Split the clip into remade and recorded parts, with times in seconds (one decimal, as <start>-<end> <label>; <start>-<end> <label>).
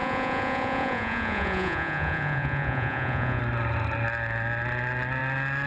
0.0-3.4 remade; 3.4-5.7 recorded